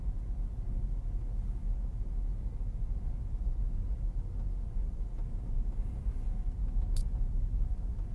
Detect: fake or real real